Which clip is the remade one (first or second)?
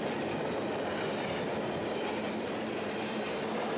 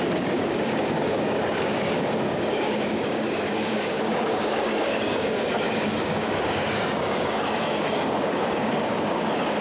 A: second